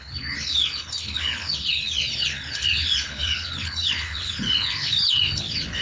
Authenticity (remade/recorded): remade